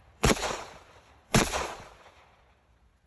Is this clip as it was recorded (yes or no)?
no